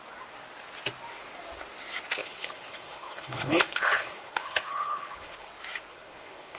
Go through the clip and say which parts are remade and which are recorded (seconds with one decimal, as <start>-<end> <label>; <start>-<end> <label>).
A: 0.0-2.2 recorded; 2.2-5.5 remade; 5.5-5.9 recorded; 5.9-6.6 remade